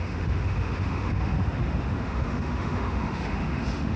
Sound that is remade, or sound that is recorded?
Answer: remade